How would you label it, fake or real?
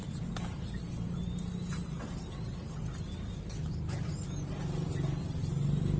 fake